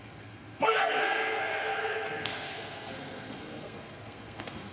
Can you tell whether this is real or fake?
fake